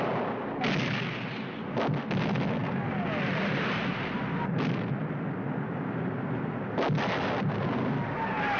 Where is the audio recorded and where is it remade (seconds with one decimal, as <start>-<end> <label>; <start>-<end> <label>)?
0.0-8.6 recorded